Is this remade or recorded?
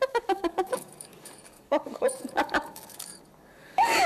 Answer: remade